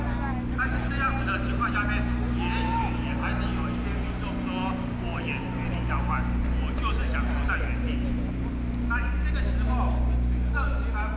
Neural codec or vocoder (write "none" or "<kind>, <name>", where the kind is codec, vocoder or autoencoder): none